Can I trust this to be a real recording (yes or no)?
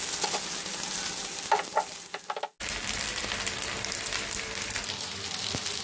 yes